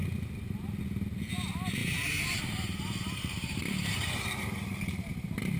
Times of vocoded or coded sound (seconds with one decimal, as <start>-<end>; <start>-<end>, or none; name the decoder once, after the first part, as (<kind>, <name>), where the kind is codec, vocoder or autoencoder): 1.8-5.6 (vocoder, BigVGAN v2)